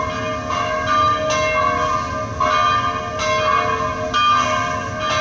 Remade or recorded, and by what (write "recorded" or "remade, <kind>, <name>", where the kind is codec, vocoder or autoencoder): recorded